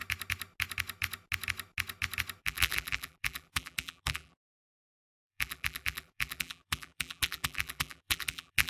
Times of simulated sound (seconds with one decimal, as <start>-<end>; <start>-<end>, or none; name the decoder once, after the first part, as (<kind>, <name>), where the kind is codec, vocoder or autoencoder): 2.4-8.7 (vocoder, BigVGAN v2)